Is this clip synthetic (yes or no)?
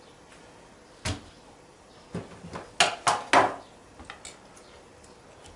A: no